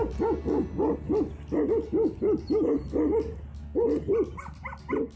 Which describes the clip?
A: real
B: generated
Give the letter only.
A